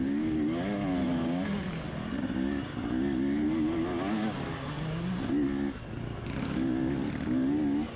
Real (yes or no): yes